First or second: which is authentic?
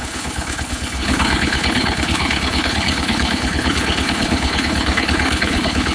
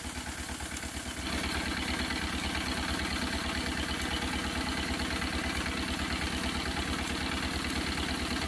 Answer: second